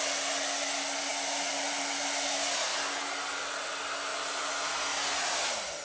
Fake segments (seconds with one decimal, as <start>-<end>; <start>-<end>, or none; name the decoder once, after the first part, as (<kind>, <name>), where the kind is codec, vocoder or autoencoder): none